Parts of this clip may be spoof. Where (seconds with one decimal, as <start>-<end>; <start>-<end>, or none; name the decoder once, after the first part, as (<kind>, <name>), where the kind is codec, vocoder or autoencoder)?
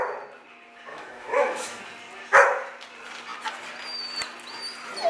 0.9-1.8 (autoencoder, DAC-VAE)